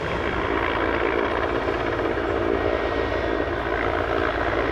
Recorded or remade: recorded